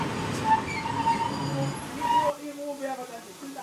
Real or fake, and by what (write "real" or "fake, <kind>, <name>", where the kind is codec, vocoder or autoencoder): real